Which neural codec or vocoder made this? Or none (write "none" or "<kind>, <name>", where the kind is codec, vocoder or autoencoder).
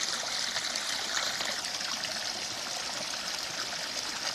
none